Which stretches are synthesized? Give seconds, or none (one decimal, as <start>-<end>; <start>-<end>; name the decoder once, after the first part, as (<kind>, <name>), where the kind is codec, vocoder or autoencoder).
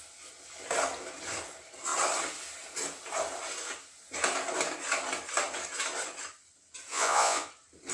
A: 6.9-7.5 (vocoder, Vocos)